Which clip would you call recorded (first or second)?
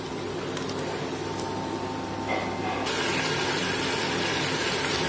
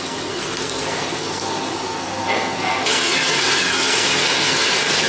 first